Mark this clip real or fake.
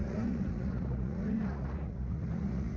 fake